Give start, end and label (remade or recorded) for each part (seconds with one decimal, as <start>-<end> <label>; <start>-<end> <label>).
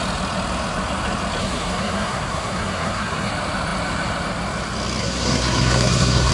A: 0.0-1.4 recorded; 1.4-3.3 remade; 3.3-5.0 recorded; 5.0-6.3 remade